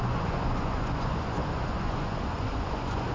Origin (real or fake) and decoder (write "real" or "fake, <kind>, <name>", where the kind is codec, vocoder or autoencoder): fake, vocoder, Vocos